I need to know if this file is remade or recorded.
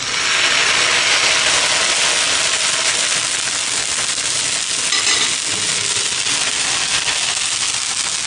recorded